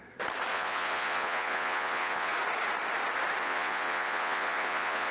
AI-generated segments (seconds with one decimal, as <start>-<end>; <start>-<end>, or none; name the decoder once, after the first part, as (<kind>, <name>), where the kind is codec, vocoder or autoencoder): 0.5-2.3 (vocoder, Vocos); 3.4-5.1